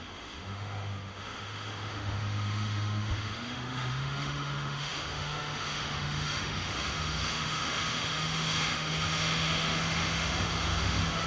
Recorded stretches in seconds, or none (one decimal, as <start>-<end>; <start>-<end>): none